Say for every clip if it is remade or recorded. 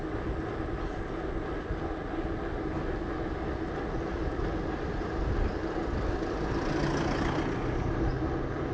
recorded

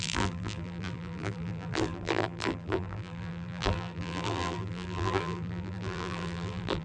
remade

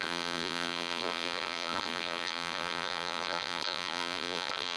remade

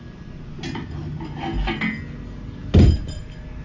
recorded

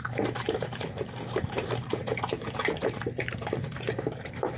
remade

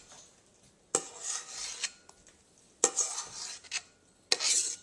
recorded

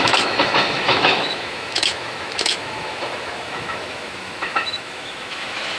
remade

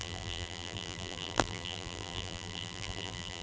remade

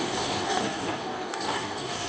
remade